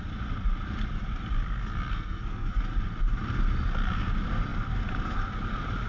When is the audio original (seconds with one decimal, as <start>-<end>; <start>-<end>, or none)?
0.0-1.9; 2.6-5.9